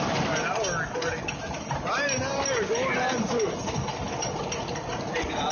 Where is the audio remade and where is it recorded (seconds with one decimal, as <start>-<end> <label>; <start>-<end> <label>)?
0.0-5.5 recorded